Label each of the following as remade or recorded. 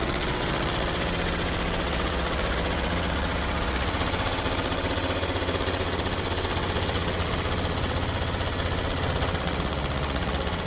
remade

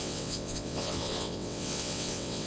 remade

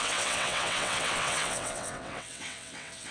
remade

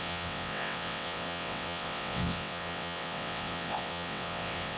remade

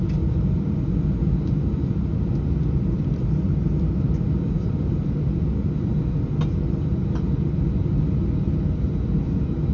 recorded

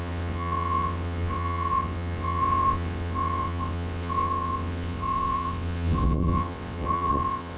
remade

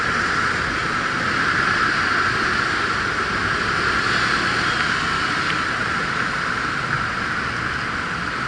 recorded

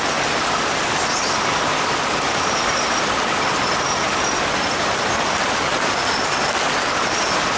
recorded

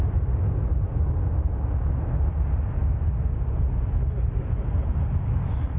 recorded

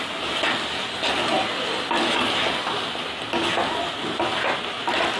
recorded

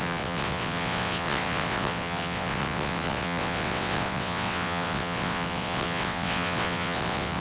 remade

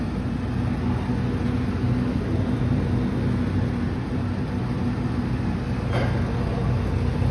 recorded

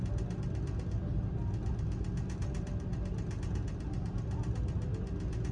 recorded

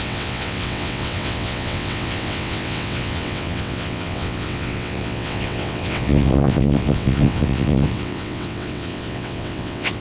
remade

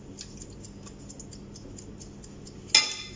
recorded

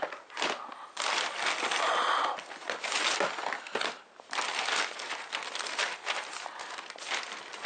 recorded